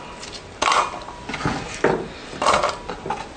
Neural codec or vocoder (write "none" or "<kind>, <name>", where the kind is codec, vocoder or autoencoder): none